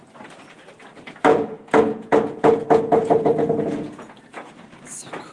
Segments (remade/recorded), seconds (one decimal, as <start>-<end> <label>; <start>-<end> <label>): 0.0-1.3 recorded; 1.3-4.5 remade; 4.5-5.3 recorded